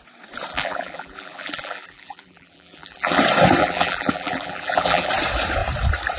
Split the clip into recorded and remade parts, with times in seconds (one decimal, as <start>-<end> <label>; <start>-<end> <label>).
0.0-0.5 recorded; 0.5-3.2 remade; 3.2-3.6 recorded; 3.6-5.1 remade; 5.1-6.2 recorded